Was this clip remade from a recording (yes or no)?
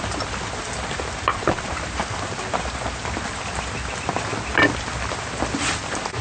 no